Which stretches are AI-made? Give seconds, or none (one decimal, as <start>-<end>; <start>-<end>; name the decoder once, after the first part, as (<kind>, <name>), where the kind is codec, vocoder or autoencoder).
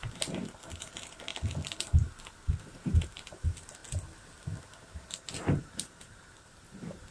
0.0-1.3 (vocoder, BigVGAN v2); 2.5-3.8; 4.9-7.1